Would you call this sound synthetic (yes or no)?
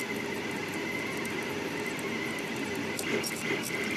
no